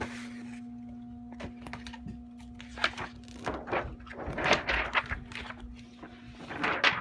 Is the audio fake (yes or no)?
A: no